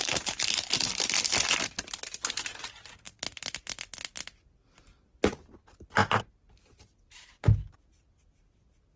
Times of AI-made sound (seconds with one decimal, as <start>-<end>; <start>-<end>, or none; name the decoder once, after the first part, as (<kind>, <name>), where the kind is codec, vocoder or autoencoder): none